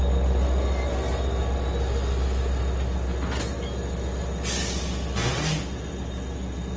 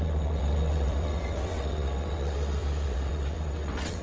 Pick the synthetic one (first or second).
second